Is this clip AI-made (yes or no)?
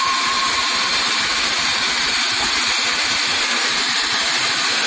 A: no